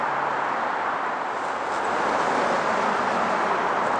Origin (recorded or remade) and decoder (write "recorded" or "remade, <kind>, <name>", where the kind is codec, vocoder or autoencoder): recorded